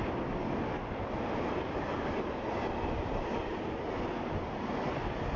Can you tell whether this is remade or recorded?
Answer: recorded